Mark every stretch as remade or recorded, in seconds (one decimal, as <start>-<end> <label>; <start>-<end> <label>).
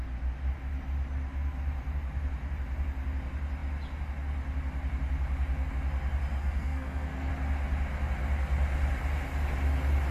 0.0-6.4 recorded; 6.4-7.3 remade; 7.3-10.1 recorded